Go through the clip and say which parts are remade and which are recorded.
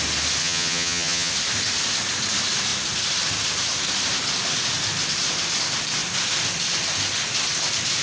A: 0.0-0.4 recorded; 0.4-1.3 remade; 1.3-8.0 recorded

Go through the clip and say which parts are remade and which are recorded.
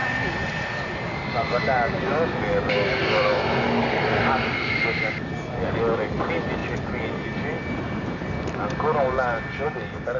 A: 0.0-10.2 recorded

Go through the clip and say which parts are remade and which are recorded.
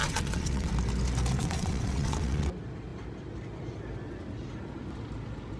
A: 0.0-0.7 remade; 0.7-1.4 recorded; 1.4-2.5 remade; 2.5-5.6 recorded